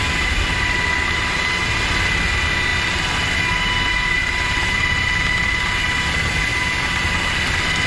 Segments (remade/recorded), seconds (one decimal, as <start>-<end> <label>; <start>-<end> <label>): 0.0-7.9 recorded